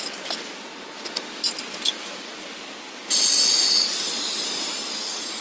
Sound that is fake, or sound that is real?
real